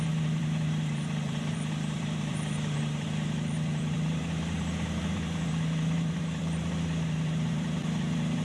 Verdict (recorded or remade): remade